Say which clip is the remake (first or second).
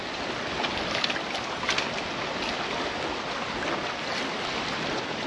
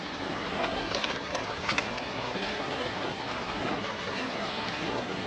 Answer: second